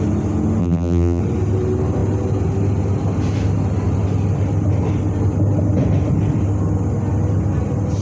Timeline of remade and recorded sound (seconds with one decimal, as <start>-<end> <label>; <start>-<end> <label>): 0.0-0.6 recorded; 0.6-1.2 remade; 1.2-8.0 recorded